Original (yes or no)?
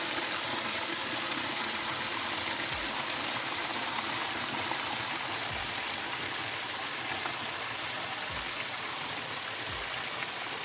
yes